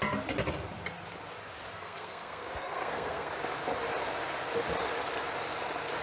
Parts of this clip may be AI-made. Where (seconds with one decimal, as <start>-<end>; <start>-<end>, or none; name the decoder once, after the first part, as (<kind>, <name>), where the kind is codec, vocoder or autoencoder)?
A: 1.7-3.3 (codec, SNAC)